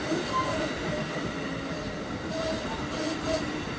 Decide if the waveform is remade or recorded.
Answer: recorded